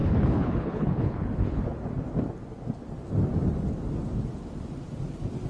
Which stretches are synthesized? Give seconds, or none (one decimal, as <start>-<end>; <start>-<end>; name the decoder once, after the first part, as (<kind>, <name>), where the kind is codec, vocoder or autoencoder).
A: 0.0-1.6 (codec, HILCodec)